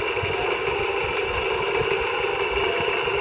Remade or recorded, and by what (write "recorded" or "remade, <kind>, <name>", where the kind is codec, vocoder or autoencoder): recorded